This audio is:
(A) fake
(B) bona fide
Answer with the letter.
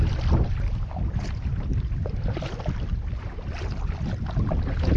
B